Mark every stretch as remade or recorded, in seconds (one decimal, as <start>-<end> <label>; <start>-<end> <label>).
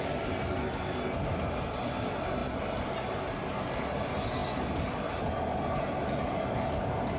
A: 0.0-7.2 recorded